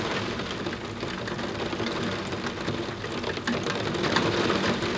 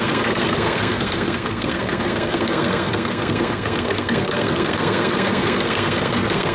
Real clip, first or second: first